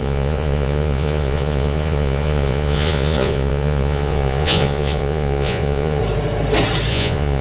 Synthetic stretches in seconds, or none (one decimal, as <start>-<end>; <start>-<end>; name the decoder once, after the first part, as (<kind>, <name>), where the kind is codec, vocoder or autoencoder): 0.0-6.0 (vocoder, Vocos); 6.9-7.4